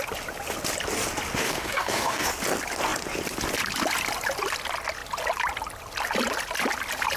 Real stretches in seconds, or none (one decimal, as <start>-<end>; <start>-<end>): 0.0-1.4; 2.3-7.2